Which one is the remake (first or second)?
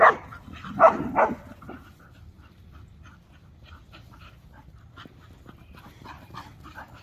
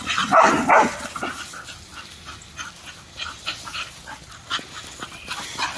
first